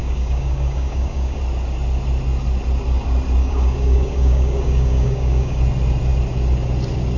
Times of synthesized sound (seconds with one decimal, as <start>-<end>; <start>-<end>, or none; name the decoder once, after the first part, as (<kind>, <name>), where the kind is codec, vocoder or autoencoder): 0.0-1.4 (codec, DAC); 3.4-5.6